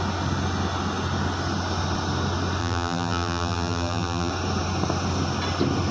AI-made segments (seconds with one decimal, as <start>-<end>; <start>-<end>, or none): 2.6-4.3